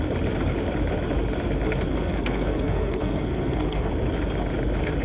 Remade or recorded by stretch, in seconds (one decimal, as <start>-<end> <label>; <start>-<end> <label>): 0.0-1.9 recorded; 1.9-3.9 remade; 3.9-5.0 recorded

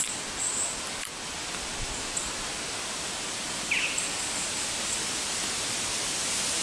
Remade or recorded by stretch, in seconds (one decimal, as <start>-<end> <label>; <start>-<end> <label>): 0.0-6.6 recorded